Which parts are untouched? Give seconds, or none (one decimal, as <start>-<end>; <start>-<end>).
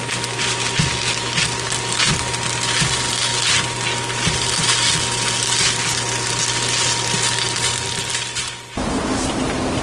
0.0-9.8